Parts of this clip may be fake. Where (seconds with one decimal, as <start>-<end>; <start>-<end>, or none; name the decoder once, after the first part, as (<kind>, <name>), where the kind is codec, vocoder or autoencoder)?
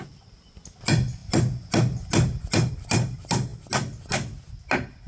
none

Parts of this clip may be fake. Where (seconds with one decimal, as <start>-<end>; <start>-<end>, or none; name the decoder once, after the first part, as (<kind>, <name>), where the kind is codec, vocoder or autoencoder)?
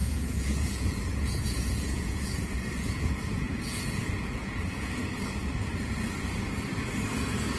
0.0-5.0 (vocoder, Vocos); 7.1-7.6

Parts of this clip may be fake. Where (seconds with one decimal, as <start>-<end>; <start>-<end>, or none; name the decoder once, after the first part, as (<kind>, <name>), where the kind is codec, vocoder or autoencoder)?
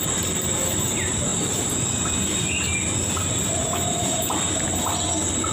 none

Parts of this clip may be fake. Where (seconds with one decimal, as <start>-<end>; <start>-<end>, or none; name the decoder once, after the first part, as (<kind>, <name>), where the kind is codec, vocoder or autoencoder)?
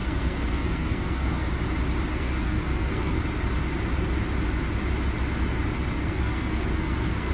0.0-1.5 (codec, SNAC); 2.1-3.2; 6.0-7.3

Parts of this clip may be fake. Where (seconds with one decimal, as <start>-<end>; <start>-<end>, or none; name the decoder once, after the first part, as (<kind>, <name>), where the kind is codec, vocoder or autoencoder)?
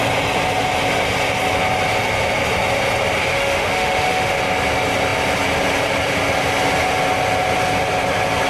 3.3-4.4 (autoencoder, DAC-VAE)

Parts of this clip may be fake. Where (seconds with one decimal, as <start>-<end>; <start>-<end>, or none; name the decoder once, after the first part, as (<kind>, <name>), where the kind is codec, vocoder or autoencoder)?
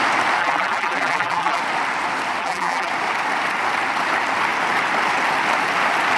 0.4-1.6 (vocoder, BigVGAN v2); 2.4-2.9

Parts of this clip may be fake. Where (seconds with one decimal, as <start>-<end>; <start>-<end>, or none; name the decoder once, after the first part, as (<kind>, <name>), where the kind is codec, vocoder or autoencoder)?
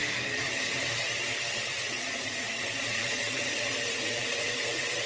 1.7-5.1 (vocoder, Vocos)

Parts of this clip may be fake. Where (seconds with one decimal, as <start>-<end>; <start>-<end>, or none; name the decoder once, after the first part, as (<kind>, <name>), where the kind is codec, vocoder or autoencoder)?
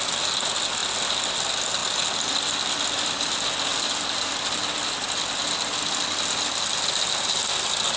none